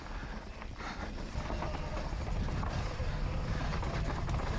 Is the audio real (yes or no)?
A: yes